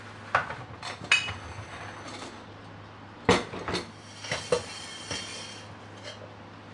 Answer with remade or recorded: recorded